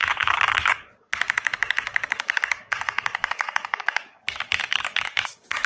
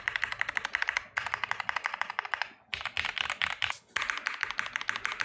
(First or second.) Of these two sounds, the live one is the second